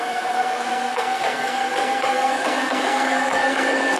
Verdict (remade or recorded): remade